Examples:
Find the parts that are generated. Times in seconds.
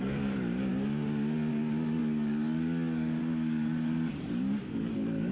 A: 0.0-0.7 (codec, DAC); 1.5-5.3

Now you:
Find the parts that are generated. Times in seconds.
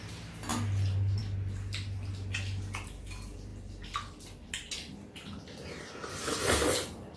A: none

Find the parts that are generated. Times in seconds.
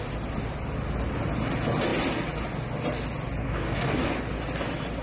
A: 3.4-4.0 (codec, DAC)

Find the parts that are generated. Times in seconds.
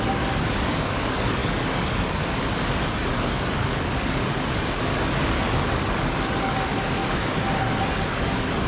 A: 0.0-8.7 (codec, DAC)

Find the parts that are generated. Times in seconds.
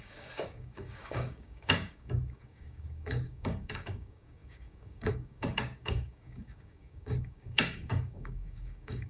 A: 0.0-9.1 (codec, DAC)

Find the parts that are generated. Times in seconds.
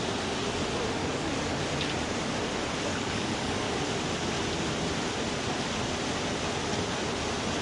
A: 1.0-1.6 (codec, DAC); 2.9-3.8